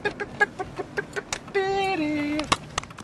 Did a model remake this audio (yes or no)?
no